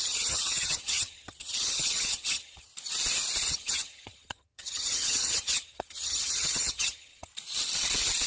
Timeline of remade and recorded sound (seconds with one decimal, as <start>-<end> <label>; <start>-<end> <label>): 0.0-2.7 remade; 2.7-3.5 recorded; 3.5-7.3 remade; 7.3-8.3 recorded